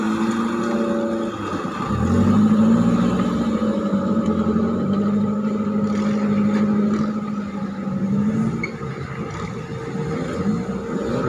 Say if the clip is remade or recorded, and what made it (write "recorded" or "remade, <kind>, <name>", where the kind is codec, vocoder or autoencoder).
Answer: recorded